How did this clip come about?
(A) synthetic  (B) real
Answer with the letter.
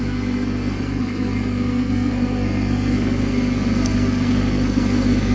A